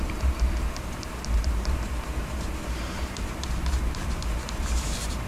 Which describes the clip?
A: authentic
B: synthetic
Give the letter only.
B